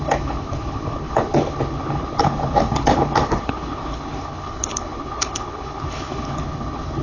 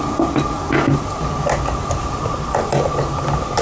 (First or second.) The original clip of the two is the second